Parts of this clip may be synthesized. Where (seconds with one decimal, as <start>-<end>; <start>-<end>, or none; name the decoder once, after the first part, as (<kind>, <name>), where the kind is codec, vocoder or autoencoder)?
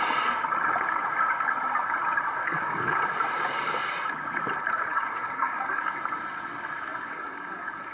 2.4-3.0 (codec, DAC); 4.9-6.0; 6.9-7.9